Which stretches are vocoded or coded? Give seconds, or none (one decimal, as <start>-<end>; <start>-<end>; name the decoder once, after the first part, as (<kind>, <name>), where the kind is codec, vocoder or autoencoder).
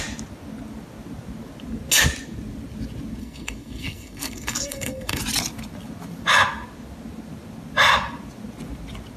3.2-5.2 (codec, SNAC)